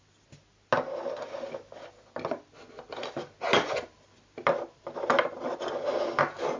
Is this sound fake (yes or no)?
no